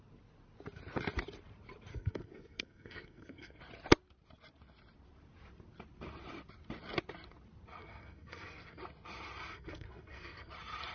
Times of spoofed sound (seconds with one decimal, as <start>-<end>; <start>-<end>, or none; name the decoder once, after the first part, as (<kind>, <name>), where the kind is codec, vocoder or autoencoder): 1.9-3.6 (codec, SNAC); 7.8-8.8; 9.5-10.5